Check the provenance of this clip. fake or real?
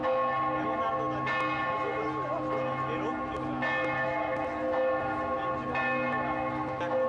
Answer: real